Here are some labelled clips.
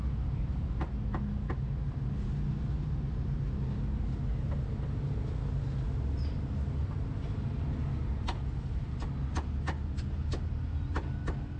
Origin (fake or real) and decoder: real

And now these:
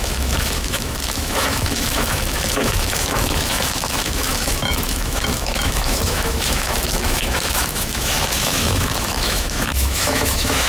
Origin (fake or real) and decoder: fake, autoencoder, DAC-VAE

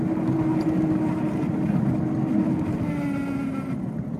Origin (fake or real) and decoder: real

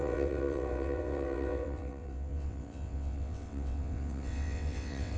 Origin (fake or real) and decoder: fake, vocoder, WaveNeXt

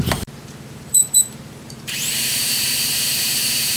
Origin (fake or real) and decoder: fake, vocoder, BigVGAN v2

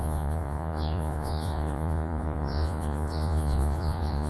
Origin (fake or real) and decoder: fake, vocoder, Vocos